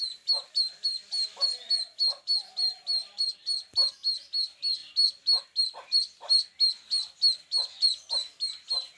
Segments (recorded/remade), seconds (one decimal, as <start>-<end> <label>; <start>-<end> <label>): 0.0-9.0 recorded